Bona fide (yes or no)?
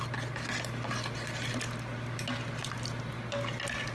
yes